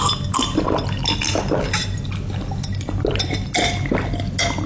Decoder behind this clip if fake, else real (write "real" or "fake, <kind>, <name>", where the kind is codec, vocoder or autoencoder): real